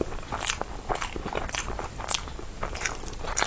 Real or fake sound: real